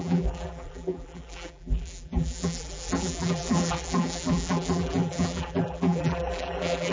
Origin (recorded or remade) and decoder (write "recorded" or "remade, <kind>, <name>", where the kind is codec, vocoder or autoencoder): remade, vocoder, BigVGAN v2